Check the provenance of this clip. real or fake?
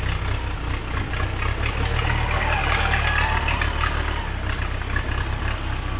real